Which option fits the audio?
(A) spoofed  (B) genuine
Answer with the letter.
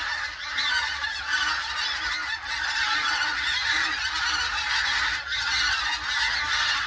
B